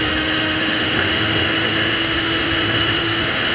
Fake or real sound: fake